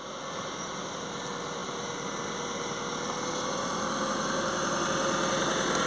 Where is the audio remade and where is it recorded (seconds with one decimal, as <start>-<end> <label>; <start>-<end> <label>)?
0.0-5.9 recorded